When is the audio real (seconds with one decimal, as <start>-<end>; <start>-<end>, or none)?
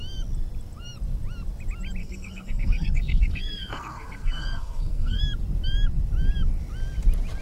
0.0-2.0; 5.2-7.4